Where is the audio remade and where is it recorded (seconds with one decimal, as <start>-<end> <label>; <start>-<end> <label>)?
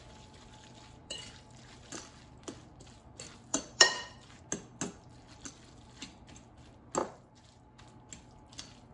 0.0-1.0 recorded; 1.0-1.7 remade; 1.7-3.5 recorded; 3.5-4.4 remade; 4.4-7.0 recorded; 7.0-7.8 remade; 7.8-8.9 recorded